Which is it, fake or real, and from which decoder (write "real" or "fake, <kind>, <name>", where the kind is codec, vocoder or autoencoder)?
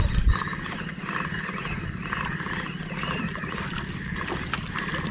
real